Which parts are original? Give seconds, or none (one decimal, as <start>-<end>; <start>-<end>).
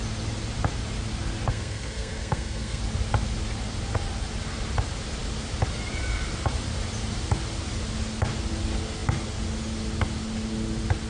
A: 0.0-1.5; 2.8-11.1